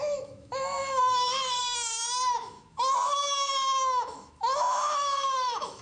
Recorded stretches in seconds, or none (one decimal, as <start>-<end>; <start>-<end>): none